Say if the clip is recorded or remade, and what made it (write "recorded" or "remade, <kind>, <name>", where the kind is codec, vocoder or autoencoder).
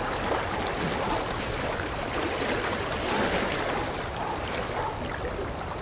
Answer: remade, vocoder, BigVGAN v2